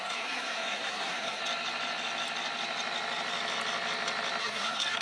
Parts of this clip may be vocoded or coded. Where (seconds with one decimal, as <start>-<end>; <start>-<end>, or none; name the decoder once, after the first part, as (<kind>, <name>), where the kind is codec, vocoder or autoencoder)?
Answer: 0.0-1.4 (codec, SNAC); 4.4-5.0